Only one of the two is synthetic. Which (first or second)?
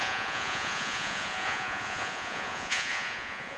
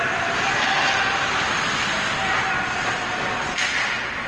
first